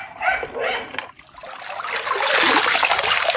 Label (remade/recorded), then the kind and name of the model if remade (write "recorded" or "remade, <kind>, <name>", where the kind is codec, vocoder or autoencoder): recorded